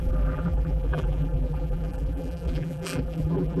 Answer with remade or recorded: remade